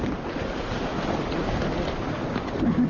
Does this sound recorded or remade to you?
recorded